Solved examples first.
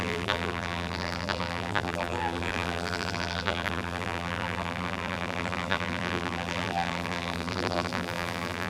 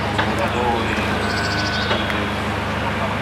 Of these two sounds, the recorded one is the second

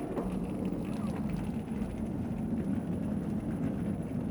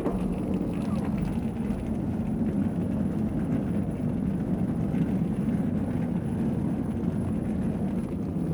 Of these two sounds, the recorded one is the second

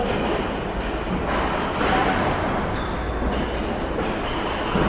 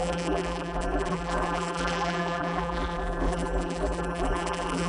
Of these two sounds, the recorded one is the first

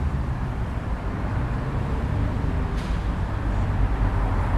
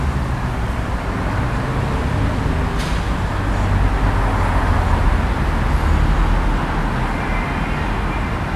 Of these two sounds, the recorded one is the second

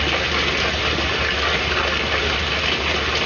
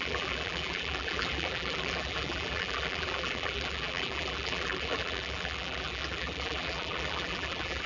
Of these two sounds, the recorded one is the first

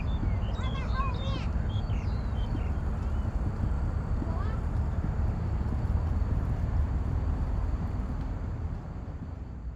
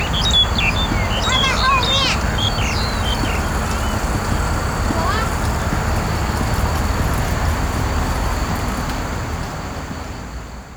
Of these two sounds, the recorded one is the second